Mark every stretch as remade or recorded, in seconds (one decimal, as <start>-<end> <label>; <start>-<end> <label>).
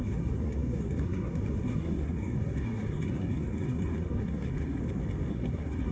0.0-4.8 remade; 4.8-5.3 recorded; 5.3-5.9 remade